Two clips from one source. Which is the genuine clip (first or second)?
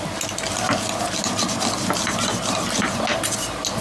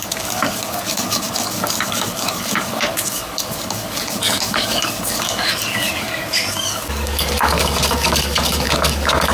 first